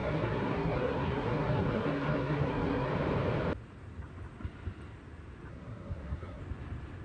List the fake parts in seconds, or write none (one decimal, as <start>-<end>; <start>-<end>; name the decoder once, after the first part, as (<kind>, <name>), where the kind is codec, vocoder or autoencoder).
0.0-2.9 (codec, SNAC); 5.5-6.4